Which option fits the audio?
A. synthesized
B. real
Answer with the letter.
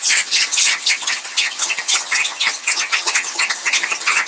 A